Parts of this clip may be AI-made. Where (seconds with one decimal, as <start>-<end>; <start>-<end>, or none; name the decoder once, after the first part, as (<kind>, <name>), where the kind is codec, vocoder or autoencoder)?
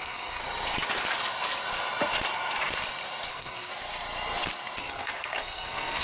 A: 0.0-0.4 (codec, SNAC); 3.3-3.7; 4.8-6.0